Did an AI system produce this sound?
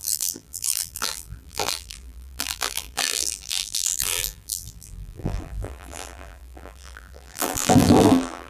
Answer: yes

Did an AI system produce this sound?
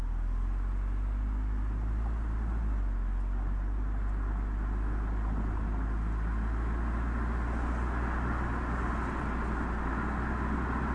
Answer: no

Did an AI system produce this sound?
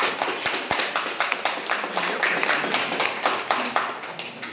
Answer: no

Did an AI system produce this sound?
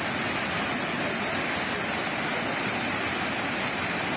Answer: no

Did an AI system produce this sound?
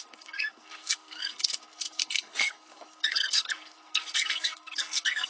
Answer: yes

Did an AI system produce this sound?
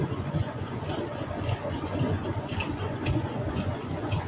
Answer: yes